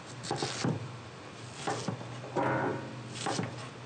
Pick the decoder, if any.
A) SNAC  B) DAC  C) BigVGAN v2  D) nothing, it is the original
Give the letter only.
D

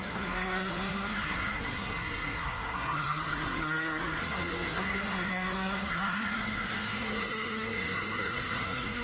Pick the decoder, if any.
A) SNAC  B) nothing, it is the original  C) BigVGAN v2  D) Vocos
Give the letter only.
A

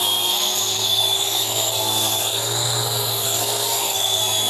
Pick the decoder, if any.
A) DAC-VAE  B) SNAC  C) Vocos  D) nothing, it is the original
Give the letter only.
B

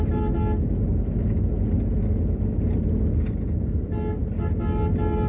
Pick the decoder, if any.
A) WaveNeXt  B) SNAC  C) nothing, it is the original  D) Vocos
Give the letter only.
C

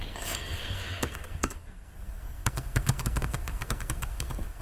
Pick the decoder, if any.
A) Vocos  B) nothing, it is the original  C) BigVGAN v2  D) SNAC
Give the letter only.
D